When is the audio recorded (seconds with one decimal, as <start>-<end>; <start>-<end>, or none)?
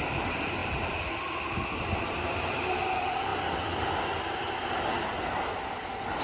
0.0-6.2